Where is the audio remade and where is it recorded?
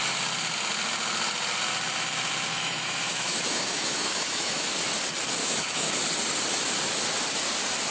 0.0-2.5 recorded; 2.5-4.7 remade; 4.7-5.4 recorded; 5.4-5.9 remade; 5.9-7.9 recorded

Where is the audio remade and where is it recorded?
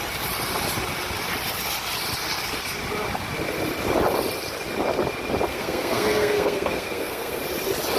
0.0-5.5 recorded; 5.5-7.4 remade; 7.4-8.0 recorded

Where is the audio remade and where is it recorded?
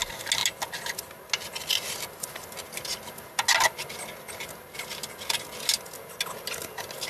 0.0-7.1 recorded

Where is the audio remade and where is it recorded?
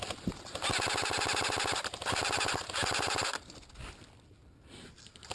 0.0-5.3 recorded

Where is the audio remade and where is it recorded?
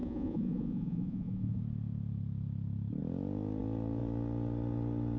0.0-1.6 remade; 1.6-5.2 recorded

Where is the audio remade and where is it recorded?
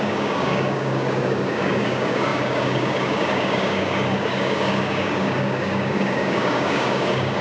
0.0-7.4 remade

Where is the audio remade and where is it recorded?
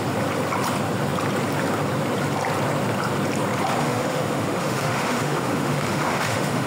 0.0-3.8 recorded; 3.8-6.7 remade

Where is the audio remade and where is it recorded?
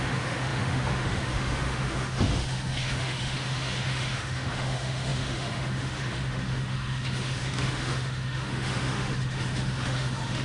0.0-10.4 remade